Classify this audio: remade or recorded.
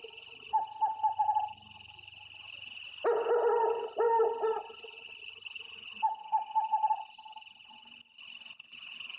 recorded